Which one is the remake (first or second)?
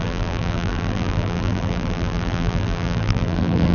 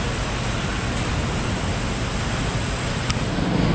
first